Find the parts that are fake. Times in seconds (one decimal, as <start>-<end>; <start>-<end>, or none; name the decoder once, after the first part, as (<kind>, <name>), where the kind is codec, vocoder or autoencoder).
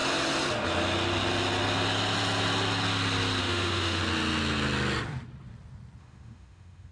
3.4-4.0 (autoencoder, DAC-VAE); 6.0-6.9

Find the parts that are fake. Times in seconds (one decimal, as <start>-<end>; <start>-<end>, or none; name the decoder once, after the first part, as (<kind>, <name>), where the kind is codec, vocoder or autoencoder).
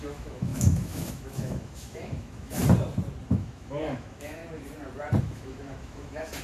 0.0-2.6 (autoencoder, DAC-VAE); 3.3-4.4; 5.2-6.4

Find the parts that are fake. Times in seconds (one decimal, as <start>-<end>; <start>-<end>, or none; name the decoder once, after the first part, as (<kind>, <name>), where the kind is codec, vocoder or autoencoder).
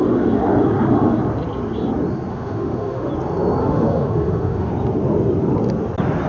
2.3-3.1 (autoencoder, DAC-VAE); 3.6-4.7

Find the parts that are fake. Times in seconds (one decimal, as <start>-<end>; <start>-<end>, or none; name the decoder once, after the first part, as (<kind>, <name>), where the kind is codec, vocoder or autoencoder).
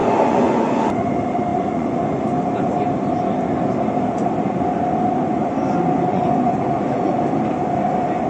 0.0-1.1 (vocoder, Vocos); 1.5-2.0; 6.1-7.2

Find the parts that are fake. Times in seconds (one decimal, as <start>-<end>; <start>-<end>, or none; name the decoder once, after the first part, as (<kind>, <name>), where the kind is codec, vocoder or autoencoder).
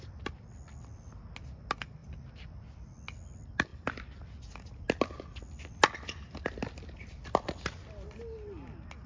2.0-2.6 (vocoder, BigVGAN v2); 3.7-4.6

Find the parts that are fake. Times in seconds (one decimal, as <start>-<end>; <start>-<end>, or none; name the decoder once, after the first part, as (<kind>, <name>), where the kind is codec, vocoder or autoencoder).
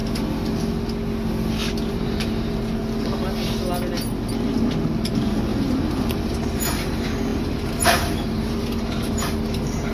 1.9-2.8 (vocoder, BigVGAN v2); 5.1-9.9